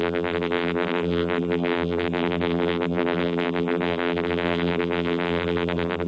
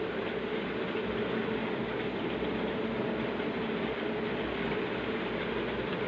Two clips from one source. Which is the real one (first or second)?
second